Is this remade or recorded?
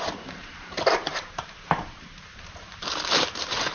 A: remade